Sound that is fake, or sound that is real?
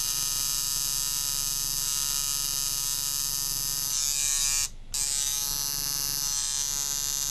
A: real